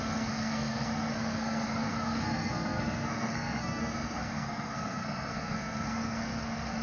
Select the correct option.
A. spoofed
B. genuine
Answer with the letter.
A